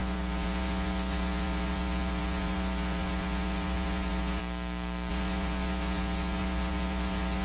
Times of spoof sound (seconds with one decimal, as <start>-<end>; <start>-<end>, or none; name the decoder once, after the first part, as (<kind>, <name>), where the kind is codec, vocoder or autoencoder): 0.0-4.4 (vocoder, Vocos); 5.1-7.4